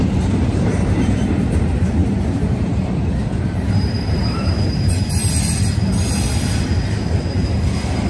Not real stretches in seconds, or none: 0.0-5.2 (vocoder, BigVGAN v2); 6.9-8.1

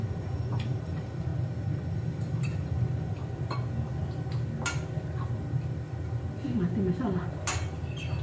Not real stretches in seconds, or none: 0.0-1.3 (vocoder, BigVGAN v2); 1.9-3.2